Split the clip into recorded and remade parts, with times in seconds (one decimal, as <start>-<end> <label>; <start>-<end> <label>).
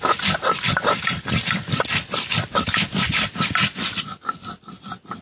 0.0-5.2 recorded